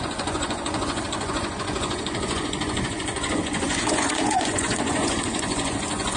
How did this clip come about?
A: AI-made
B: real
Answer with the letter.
A